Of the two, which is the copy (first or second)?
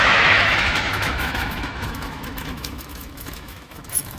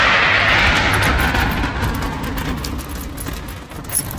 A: first